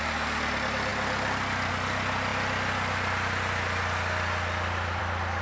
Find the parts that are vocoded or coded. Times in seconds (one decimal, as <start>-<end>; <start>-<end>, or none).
none